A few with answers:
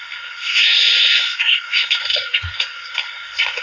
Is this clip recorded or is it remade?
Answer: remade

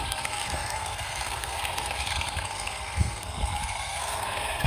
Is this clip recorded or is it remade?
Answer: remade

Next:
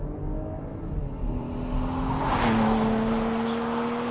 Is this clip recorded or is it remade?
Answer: recorded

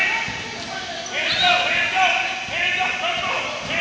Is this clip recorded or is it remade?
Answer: recorded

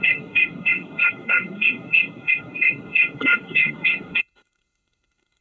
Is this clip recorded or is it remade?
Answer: remade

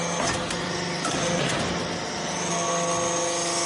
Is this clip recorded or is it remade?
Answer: recorded